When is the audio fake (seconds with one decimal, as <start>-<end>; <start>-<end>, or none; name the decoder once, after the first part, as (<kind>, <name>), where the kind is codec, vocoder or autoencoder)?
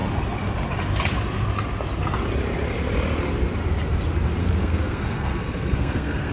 4.4-6.3 (codec, SNAC)